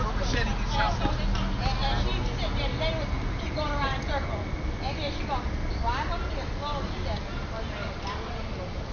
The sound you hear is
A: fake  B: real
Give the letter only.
B